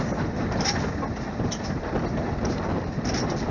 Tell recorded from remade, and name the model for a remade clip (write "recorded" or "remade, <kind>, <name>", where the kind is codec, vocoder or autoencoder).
recorded